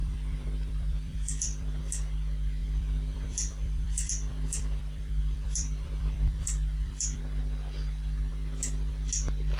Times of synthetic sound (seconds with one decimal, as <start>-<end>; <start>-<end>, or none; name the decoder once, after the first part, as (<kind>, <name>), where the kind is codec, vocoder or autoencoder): 0.0-1.8 (vocoder, BigVGAN v2); 2.6-7.2

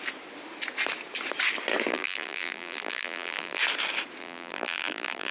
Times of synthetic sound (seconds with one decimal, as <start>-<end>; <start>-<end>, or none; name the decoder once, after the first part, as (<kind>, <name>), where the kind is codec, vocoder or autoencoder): 1.9-3.6 (vocoder, BigVGAN v2); 4.2-5.3

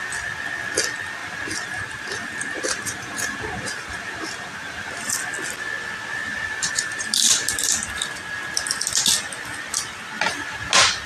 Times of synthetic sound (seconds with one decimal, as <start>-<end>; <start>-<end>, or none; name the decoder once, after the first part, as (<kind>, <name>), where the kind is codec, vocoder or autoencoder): 1.2-5.0 (vocoder, BigVGAN v2); 6.3-7.7

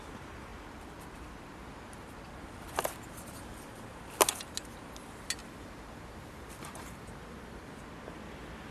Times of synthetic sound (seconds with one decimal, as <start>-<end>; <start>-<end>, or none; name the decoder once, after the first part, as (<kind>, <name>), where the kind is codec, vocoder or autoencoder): 5.4-7.7 (vocoder, BigVGAN v2)

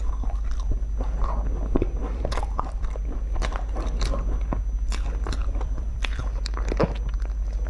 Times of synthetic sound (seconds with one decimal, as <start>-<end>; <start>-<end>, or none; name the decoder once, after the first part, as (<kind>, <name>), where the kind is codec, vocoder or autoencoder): 2.0-3.6 (vocoder, BigVGAN v2); 5.4-6.2

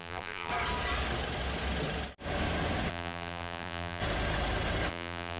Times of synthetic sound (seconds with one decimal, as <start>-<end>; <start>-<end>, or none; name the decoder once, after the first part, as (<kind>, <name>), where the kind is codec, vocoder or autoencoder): 0.0-0.5 (vocoder, BigVGAN v2); 2.9-4.0; 4.9-5.4

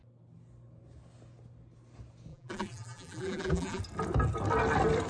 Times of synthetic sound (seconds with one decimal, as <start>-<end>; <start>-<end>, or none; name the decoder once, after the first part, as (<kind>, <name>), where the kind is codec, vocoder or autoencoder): 2.3-3.8 (vocoder, BigVGAN v2)

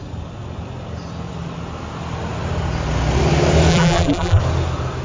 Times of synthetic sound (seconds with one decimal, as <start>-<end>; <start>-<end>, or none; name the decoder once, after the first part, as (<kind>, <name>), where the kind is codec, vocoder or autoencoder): 3.7-4.4 (vocoder, BigVGAN v2)